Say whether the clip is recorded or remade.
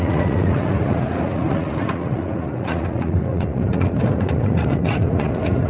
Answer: remade